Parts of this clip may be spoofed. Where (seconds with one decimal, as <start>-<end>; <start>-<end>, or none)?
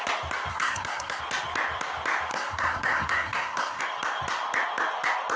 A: 0.5-1.2; 2.3-3.8